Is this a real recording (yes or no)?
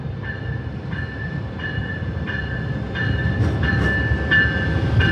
yes